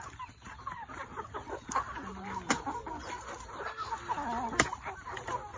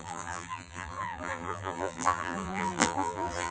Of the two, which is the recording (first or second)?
first